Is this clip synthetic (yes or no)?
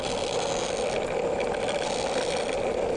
no